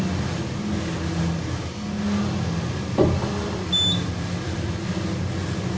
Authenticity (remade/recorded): recorded